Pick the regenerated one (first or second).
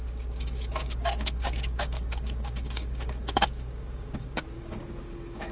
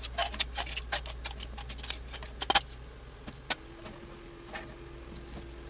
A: first